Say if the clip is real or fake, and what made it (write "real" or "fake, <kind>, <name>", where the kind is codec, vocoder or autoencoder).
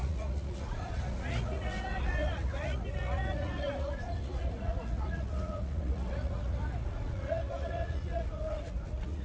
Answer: fake, vocoder, Vocos